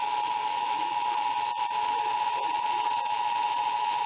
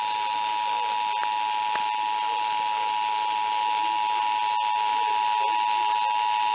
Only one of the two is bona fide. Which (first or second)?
second